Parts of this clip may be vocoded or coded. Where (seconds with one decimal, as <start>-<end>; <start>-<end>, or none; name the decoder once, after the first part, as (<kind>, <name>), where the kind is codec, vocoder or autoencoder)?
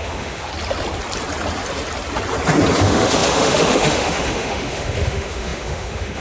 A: 0.0-0.5 (autoencoder, DAC-VAE); 2.8-6.2